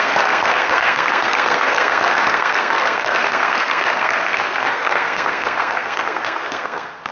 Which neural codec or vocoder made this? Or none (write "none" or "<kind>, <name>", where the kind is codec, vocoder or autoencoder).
codec, SNAC